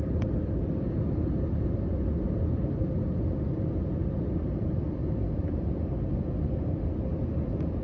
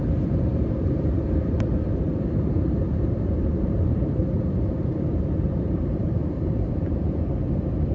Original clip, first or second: first